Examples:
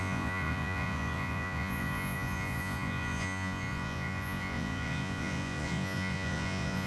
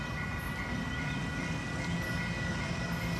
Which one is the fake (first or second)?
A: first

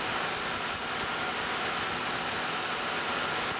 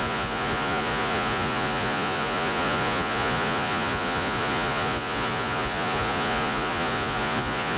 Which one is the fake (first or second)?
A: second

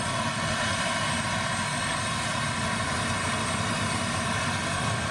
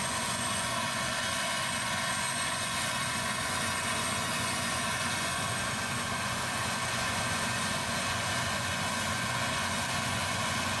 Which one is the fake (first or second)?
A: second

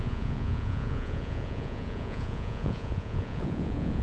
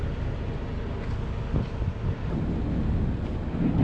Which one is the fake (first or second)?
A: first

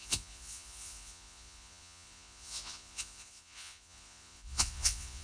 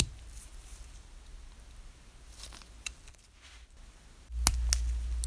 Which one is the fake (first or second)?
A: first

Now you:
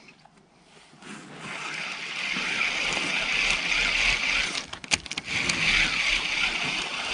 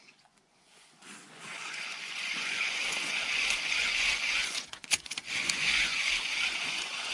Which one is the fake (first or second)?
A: second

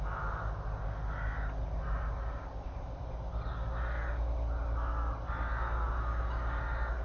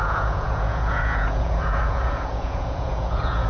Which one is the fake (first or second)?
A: second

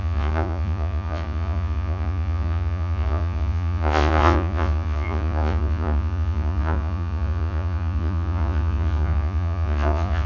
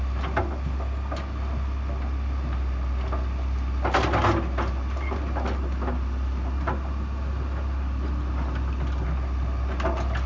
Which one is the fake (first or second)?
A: first